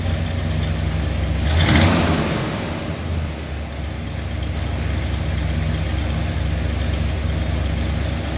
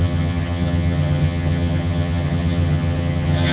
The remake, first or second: second